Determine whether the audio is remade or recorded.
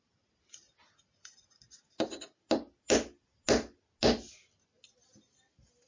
recorded